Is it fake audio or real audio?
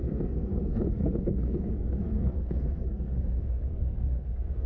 fake